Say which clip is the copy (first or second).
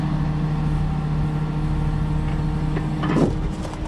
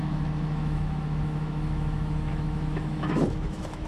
second